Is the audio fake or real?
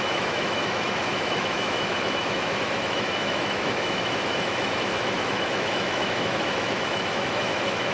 fake